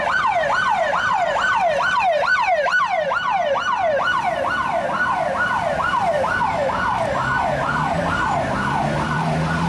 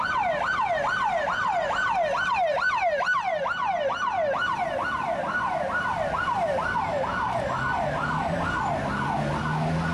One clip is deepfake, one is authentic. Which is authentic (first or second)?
second